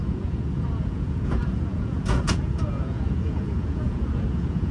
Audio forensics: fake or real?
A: fake